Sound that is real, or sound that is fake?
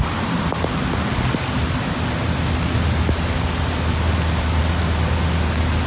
real